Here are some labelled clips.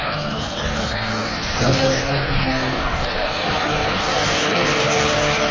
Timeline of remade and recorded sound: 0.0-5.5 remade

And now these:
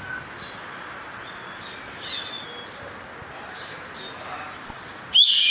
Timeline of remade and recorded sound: 0.0-5.5 recorded

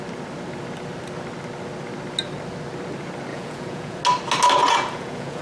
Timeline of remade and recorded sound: 0.0-3.3 recorded; 3.3-4.0 remade; 4.0-4.6 recorded; 4.6-5.4 remade

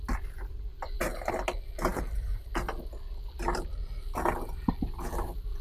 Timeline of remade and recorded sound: 0.0-5.6 recorded